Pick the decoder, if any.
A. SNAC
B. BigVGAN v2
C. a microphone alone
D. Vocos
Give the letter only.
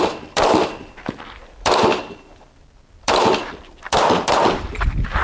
B